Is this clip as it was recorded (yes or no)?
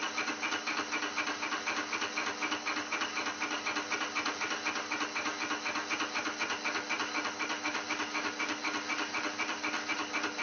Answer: yes